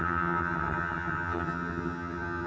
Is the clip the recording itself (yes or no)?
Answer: no